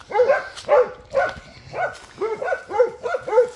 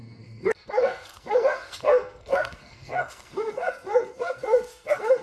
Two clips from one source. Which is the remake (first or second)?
second